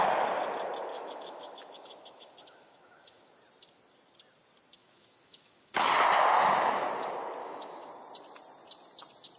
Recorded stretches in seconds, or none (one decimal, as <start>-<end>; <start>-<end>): 0.0-0.9; 3.2-4.8; 5.9-7.4; 7.9-9.4